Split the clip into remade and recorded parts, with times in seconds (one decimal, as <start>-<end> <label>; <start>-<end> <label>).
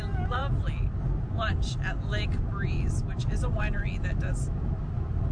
0.0-5.3 recorded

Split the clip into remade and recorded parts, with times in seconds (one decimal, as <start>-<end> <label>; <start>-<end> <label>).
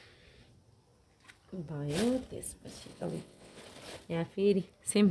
0.0-2.9 recorded; 2.9-3.6 remade; 3.6-5.1 recorded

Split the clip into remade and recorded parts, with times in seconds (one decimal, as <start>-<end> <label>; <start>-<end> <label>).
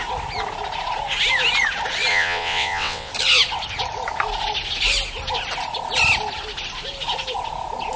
0.0-2.1 recorded; 2.1-3.1 remade; 3.1-8.0 recorded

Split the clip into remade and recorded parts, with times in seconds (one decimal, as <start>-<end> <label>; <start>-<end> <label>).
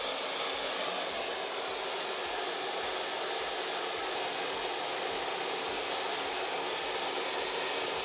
0.0-8.0 recorded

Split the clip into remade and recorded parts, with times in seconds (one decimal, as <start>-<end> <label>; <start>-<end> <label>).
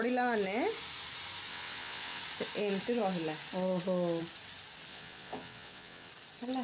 0.0-1.5 recorded; 1.5-2.2 remade; 2.2-4.9 recorded; 4.9-6.1 remade; 6.1-6.6 recorded